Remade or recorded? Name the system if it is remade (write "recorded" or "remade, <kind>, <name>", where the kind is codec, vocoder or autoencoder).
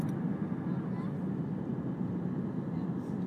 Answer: recorded